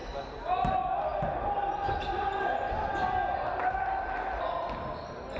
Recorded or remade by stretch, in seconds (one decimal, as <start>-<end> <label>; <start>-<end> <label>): 0.0-5.4 recorded